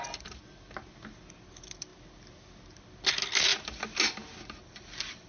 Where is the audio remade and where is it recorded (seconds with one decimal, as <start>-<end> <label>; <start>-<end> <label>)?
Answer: 0.0-5.3 recorded